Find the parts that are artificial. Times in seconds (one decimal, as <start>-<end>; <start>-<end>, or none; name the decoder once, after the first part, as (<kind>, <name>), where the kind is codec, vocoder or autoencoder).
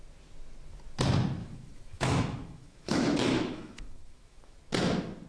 1.4-4.6 (autoencoder, DAC-VAE)